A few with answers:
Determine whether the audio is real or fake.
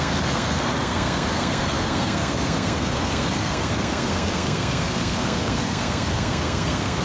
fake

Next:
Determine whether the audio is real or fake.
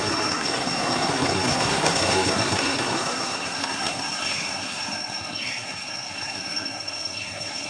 fake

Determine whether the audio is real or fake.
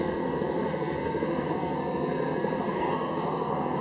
fake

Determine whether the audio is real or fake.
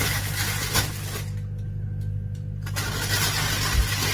real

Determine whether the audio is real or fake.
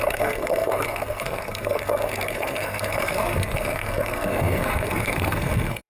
fake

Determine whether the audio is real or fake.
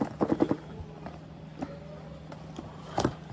real